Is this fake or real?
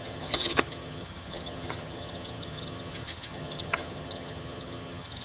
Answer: fake